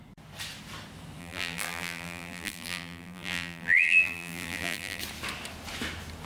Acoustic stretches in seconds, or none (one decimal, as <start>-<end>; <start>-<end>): 0.0-1.2; 5.0-6.3

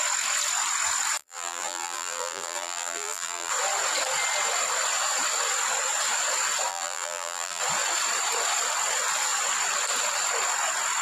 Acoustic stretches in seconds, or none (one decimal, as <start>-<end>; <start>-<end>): 0.0-1.2; 3.5-6.7; 7.6-11.0

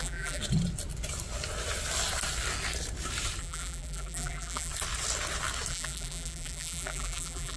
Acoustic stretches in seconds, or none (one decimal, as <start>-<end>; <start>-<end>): 0.4-3.4; 4.7-5.7

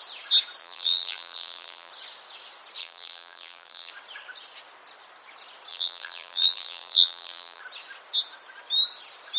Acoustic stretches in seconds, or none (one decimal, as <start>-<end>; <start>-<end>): 0.0-0.6; 1.9-2.8; 3.9-5.7; 7.6-9.4

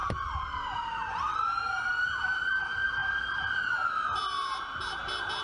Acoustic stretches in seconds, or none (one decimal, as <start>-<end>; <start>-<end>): 0.0-5.4

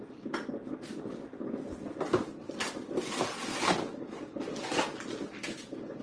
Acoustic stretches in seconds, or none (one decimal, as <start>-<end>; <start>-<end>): 0.0-6.0

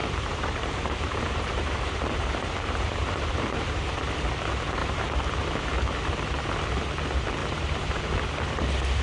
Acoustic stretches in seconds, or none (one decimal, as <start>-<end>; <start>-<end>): 3.9-4.8; 5.3-7.4; 8.1-9.0

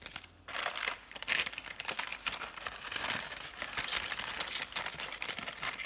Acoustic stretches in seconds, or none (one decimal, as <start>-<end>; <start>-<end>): 0.0-5.9